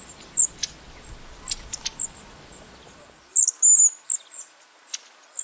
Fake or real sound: real